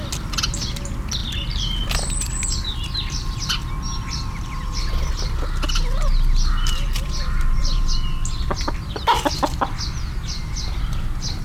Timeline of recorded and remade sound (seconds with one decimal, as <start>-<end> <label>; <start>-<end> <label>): 0.0-6.5 recorded; 6.5-7.9 remade; 7.9-11.4 recorded